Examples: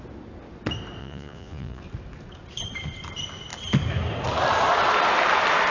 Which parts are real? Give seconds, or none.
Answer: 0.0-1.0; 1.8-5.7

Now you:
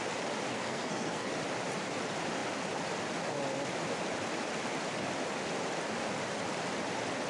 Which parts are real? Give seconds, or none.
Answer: 0.0-0.5; 1.3-7.3

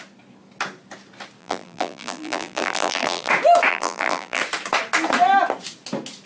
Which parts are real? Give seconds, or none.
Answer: 0.0-1.4; 3.3-3.7; 4.4-6.3

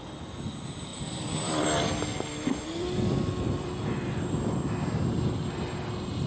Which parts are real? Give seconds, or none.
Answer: 0.0-0.9; 4.7-6.3

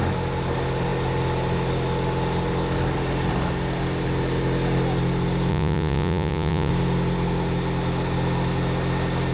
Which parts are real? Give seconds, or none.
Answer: 0.0-5.5; 6.7-9.3

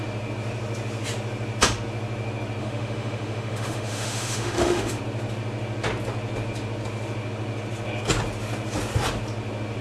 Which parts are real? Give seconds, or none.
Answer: 0.0-2.6; 5.0-9.8

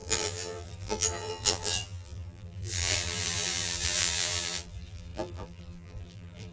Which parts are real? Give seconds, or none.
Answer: none

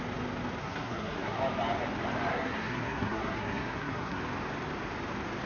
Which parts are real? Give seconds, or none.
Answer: 0.0-0.6; 1.4-2.3; 4.2-5.5